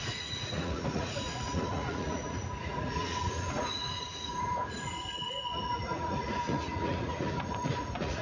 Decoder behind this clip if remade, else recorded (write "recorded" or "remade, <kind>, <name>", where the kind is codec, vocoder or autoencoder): remade, vocoder, Vocos